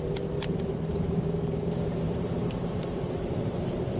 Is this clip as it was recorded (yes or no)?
no